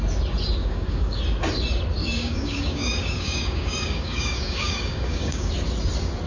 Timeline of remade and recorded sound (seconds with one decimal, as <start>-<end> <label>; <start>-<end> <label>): 0.0-0.6 recorded; 0.6-1.2 remade; 1.2-2.0 recorded; 2.0-5.5 remade; 5.5-6.3 recorded